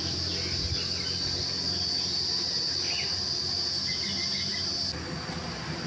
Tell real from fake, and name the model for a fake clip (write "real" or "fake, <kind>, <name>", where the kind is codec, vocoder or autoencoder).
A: real